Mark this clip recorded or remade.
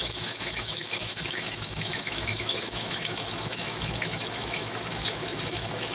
remade